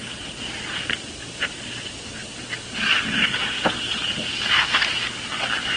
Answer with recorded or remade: recorded